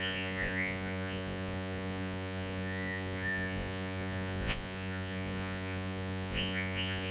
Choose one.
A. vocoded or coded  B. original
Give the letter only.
A